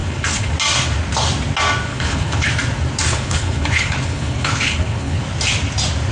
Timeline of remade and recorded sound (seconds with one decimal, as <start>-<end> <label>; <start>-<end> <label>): 0.0-0.5 remade; 0.5-1.9 recorded; 1.9-2.5 remade; 2.5-3.1 recorded; 3.1-5.2 remade; 5.2-6.1 recorded